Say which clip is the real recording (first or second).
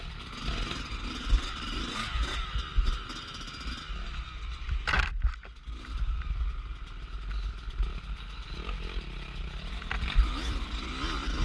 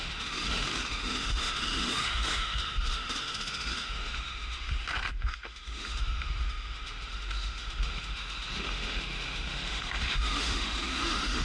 first